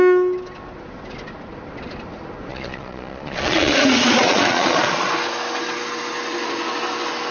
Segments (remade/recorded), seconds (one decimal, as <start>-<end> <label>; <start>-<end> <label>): 0.0-2.5 recorded; 2.5-5.1 remade; 5.1-7.3 recorded